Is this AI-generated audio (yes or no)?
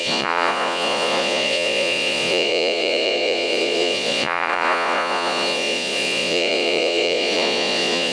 yes